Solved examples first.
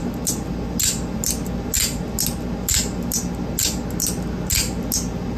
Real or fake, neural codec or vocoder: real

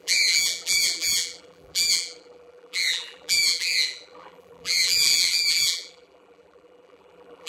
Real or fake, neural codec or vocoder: fake, vocoder, BigVGAN v2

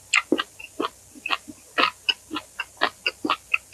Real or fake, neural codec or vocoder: real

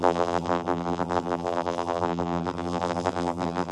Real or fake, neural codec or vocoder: fake, vocoder, BigVGAN v2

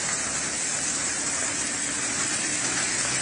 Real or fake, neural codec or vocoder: real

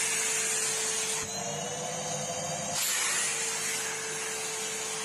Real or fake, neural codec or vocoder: real